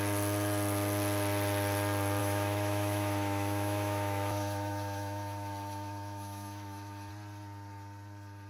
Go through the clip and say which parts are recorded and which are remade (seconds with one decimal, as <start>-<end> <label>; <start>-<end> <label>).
0.0-2.2 recorded; 2.2-7.1 remade; 7.1-8.5 recorded